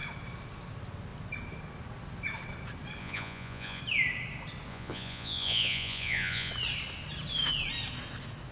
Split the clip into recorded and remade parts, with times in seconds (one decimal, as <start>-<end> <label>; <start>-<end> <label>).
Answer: 0.0-3.0 recorded; 3.0-3.8 remade; 3.8-4.7 recorded; 4.7-6.5 remade; 6.5-8.5 recorded